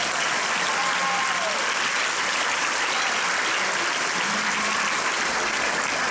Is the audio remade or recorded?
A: recorded